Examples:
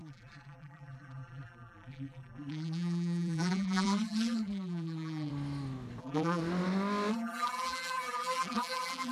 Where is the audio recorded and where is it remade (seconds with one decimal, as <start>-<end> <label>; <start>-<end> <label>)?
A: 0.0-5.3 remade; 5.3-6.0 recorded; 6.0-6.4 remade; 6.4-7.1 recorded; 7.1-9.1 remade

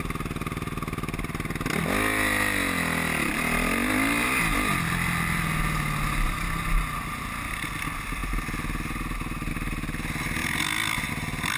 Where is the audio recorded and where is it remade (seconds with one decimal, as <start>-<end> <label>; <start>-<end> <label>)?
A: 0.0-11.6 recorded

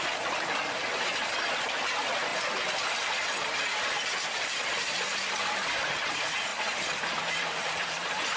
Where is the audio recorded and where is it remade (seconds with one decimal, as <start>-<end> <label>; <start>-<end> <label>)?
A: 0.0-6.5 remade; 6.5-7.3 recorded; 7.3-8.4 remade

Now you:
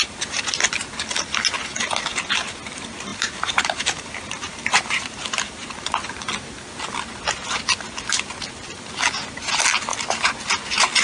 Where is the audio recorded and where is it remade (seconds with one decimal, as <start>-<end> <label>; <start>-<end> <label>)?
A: 0.0-3.1 recorded; 3.1-5.4 remade; 5.4-11.0 recorded

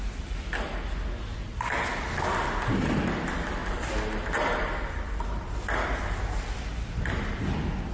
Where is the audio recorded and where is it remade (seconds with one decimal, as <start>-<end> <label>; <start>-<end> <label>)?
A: 0.0-3.6 recorded; 3.6-7.4 remade; 7.4-7.9 recorded

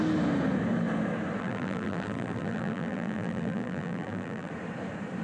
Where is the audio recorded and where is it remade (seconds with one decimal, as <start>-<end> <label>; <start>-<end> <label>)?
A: 0.0-1.4 recorded; 1.4-4.5 remade; 4.5-5.2 recorded

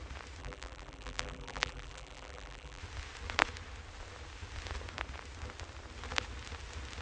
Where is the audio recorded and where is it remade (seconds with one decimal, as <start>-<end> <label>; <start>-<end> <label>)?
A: 0.0-0.4 recorded; 0.4-2.8 remade; 2.8-7.0 recorded

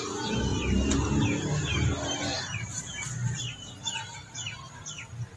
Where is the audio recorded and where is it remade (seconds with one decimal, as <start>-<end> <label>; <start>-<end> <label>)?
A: 0.0-2.3 recorded; 2.3-3.7 remade; 3.7-4.2 recorded; 4.2-5.4 remade